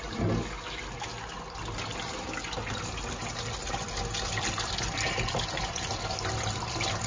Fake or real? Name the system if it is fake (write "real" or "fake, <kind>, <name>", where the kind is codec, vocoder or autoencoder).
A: real